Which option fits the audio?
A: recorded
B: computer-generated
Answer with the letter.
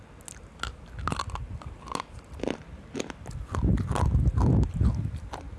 A